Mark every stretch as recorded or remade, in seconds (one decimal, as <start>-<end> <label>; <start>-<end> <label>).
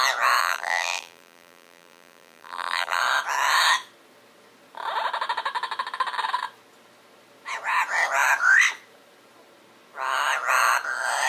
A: 0.0-0.4 recorded; 0.4-3.0 remade; 3.0-11.3 recorded